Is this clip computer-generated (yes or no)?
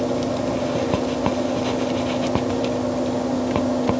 no